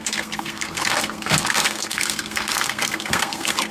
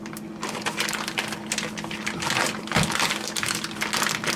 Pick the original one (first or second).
second